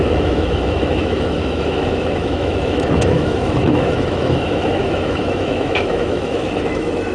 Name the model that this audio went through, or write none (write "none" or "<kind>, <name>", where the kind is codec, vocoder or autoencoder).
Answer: autoencoder, DAC-VAE